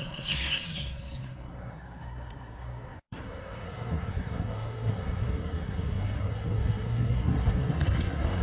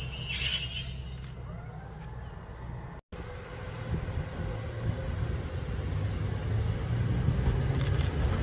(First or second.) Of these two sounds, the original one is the second